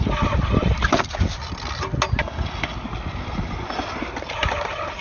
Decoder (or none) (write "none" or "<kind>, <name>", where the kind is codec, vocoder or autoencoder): none